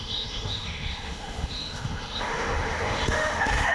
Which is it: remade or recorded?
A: remade